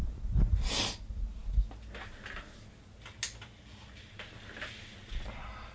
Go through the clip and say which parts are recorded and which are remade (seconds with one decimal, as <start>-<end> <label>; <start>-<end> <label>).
0.0-5.7 recorded